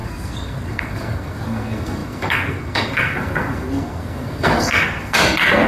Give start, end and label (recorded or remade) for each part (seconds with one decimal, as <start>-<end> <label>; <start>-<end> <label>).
0.0-5.7 remade